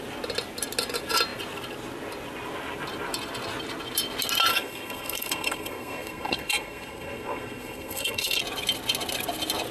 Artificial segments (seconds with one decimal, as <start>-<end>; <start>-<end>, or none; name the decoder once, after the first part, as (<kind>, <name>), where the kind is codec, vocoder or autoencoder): 4.5-8.4 (codec, SNAC)